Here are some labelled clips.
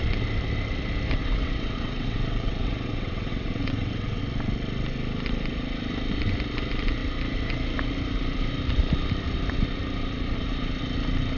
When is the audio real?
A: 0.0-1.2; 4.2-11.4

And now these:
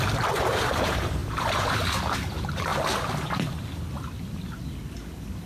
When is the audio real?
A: 2.7-5.5